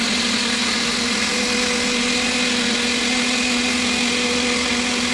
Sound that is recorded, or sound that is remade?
recorded